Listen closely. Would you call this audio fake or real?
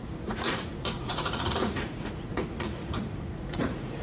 fake